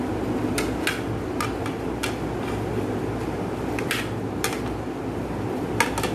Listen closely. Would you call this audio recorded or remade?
recorded